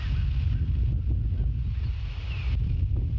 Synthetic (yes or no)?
no